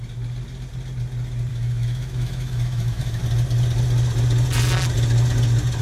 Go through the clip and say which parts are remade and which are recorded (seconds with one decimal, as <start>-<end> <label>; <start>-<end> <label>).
0.0-1.5 recorded; 1.5-3.2 remade; 3.2-5.8 recorded